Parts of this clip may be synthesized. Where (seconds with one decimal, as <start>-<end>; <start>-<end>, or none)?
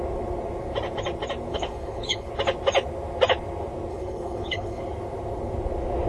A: 1.5-2.3; 3.9-4.8